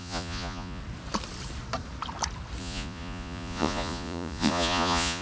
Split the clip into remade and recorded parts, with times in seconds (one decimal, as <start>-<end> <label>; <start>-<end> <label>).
0.0-0.8 remade; 0.8-2.6 recorded; 2.6-5.2 remade

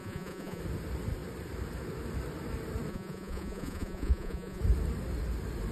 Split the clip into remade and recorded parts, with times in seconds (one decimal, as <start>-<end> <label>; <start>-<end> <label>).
0.0-0.6 remade; 0.6-2.9 recorded; 2.9-4.6 remade; 4.6-5.7 recorded

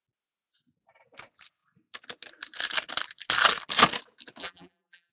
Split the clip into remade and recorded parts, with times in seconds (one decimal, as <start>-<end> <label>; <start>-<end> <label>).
0.0-4.4 recorded; 4.4-5.1 remade

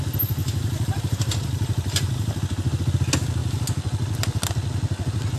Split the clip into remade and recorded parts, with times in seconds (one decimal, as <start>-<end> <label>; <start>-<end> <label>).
0.0-0.4 recorded; 0.4-2.4 remade; 2.4-5.4 recorded

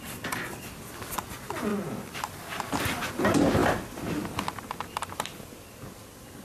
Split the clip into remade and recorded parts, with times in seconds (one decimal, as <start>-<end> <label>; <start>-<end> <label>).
0.0-1.7 recorded; 1.7-3.1 remade; 3.1-6.4 recorded

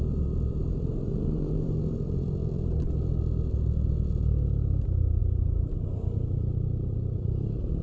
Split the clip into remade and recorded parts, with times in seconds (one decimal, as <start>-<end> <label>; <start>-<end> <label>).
0.0-2.4 remade; 2.4-5.2 recorded; 5.2-7.8 remade

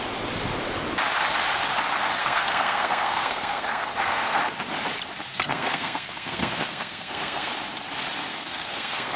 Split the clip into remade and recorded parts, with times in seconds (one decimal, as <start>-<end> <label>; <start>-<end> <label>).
0.0-2.2 recorded; 2.2-4.4 remade; 4.4-5.3 recorded; 5.3-7.5 remade; 7.5-8.3 recorded; 8.3-9.2 remade

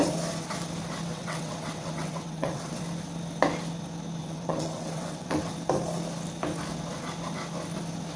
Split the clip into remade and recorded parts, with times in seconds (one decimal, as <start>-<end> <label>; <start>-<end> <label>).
0.0-1.1 recorded; 1.1-2.8 remade; 2.8-4.2 recorded; 4.2-5.5 remade; 5.5-8.2 recorded